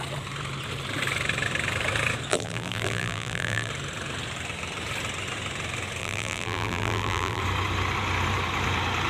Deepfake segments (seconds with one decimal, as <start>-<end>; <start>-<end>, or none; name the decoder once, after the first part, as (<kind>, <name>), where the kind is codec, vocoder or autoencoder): 2.3-3.7 (vocoder, BigVGAN v2); 6.0-7.4